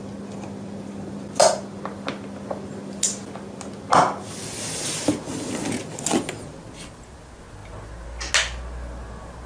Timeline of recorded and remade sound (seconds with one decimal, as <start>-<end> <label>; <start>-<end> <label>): 0.0-9.5 recorded